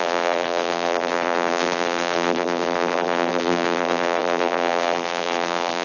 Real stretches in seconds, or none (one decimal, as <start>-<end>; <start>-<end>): none